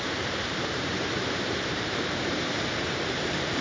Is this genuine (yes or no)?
no